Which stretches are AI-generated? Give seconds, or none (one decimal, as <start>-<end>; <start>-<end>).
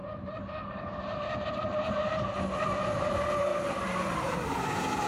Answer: 0.0-2.4; 3.5-4.6